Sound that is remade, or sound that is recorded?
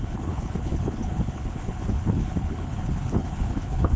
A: remade